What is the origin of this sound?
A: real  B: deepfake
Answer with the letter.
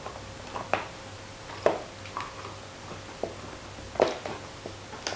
A